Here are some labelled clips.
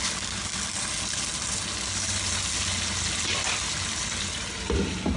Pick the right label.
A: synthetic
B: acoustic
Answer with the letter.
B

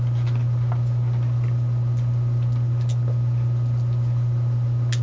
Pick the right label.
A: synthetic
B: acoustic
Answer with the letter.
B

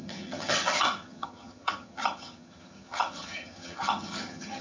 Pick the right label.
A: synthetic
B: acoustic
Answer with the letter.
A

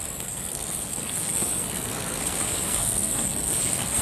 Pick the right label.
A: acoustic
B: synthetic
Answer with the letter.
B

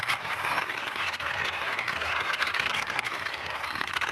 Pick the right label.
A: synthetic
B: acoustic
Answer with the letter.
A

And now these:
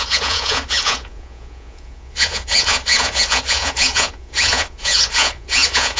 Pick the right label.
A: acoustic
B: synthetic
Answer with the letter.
B